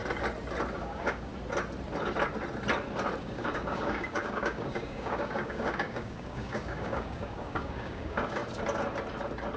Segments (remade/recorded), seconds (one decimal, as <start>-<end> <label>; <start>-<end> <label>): 0.0-0.8 recorded; 0.8-1.3 remade; 1.3-3.2 recorded; 3.2-8.4 remade; 8.4-9.6 recorded

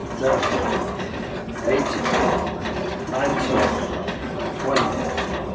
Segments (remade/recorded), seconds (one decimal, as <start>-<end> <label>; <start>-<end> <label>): 0.0-5.5 recorded

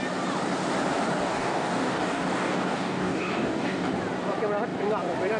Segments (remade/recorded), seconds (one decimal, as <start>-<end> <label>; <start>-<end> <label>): 0.0-1.2 recorded; 1.2-3.9 remade; 3.9-5.4 recorded

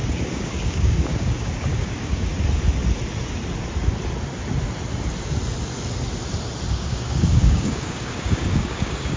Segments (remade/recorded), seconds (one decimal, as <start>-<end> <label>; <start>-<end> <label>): 0.0-2.3 remade; 2.3-6.7 recorded; 6.7-9.2 remade